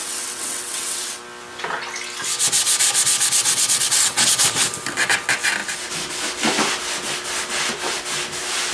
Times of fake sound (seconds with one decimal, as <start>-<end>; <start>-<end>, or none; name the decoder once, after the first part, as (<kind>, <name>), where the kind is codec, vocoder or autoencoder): 0.0-1.2 (vocoder, WaveNeXt); 3.4-4.3